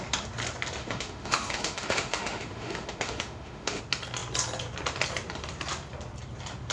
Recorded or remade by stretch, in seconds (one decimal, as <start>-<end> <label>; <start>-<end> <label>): 0.0-0.8 recorded; 0.8-3.8 remade; 3.8-6.7 recorded